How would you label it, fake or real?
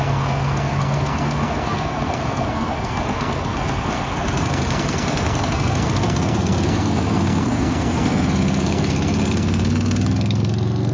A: fake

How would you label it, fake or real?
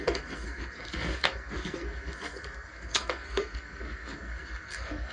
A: fake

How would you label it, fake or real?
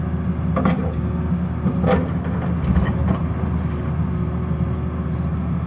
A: real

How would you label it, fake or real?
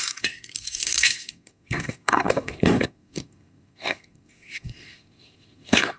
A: fake